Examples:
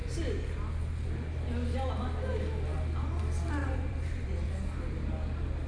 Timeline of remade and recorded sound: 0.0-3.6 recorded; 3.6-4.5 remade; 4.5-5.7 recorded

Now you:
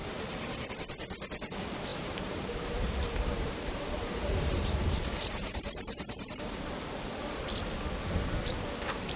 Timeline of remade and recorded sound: 0.0-0.7 remade; 0.7-1.9 recorded; 1.9-6.7 remade; 6.7-9.2 recorded

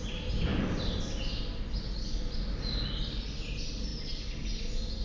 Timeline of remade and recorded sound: 0.0-5.0 recorded

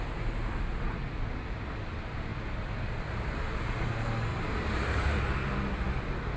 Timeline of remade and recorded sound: 0.0-4.3 recorded; 4.3-5.2 remade; 5.2-6.4 recorded